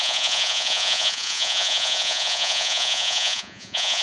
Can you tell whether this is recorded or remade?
remade